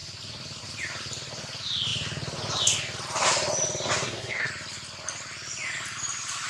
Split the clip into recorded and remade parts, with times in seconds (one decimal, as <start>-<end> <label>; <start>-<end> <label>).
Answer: 0.0-4.0 recorded; 4.0-4.5 remade; 4.5-6.5 recorded